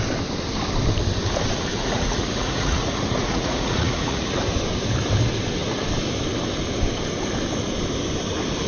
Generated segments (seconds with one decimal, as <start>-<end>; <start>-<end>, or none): 1.7-4.4